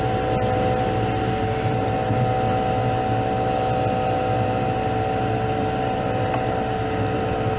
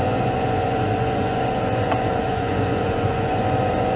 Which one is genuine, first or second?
first